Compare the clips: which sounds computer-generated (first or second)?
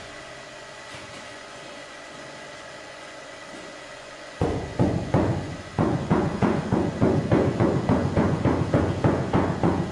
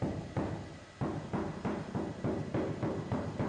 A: first